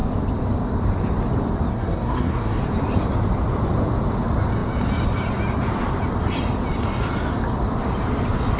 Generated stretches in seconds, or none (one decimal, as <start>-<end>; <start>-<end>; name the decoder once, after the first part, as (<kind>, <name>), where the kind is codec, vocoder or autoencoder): 1.7-2.6 (codec, SNAC)